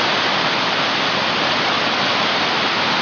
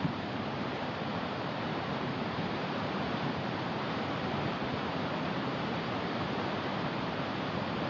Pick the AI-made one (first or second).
second